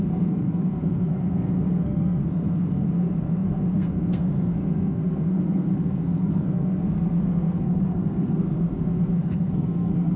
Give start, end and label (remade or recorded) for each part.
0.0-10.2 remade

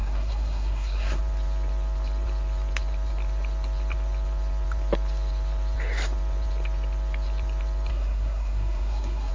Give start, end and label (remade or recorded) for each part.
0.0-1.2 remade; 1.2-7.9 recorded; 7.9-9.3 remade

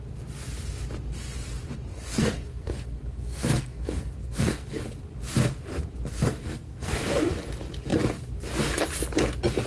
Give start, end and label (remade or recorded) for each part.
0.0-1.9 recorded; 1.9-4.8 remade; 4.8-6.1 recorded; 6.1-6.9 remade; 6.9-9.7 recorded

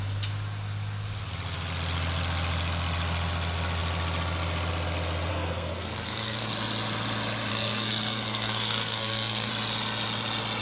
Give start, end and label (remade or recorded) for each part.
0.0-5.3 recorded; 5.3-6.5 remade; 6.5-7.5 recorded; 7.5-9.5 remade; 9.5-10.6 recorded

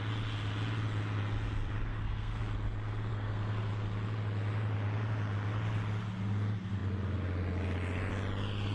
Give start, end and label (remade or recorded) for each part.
0.0-1.9 recorded; 1.9-2.4 remade; 2.4-3.1 recorded; 3.1-3.7 remade; 3.7-8.7 recorded

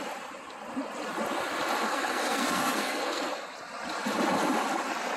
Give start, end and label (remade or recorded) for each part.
0.0-1.8 recorded; 1.8-3.3 remade; 3.3-5.2 recorded